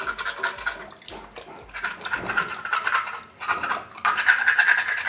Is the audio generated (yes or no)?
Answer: no